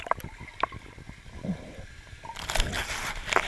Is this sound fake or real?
real